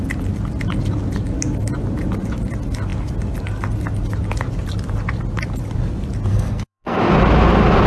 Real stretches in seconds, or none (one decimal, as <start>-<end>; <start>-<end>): 0.0-6.3; 7.0-7.9